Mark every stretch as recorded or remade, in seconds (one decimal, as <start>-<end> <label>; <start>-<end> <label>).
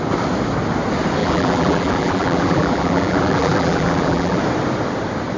0.0-1.2 recorded; 1.2-4.4 remade; 4.4-5.4 recorded